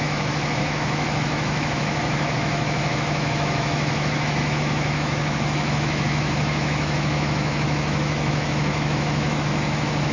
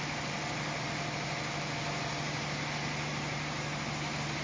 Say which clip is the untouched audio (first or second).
second